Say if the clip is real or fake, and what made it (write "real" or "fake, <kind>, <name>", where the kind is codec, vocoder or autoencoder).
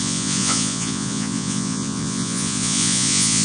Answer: fake, vocoder, Vocos